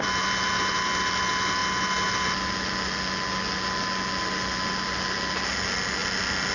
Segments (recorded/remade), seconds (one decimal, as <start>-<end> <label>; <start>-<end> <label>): 0.0-6.5 recorded